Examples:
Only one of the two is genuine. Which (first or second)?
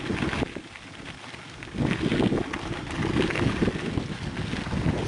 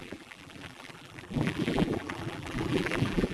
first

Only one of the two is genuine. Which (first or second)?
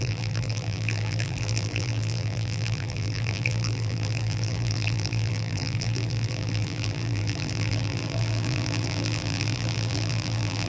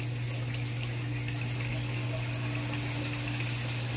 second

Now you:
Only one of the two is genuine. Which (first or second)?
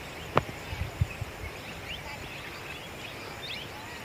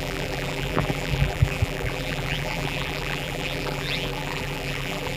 first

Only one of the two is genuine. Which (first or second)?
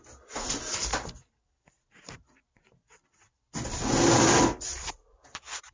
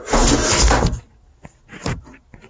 second